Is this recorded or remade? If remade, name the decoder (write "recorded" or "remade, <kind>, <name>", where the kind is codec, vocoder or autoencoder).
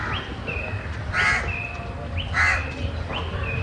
recorded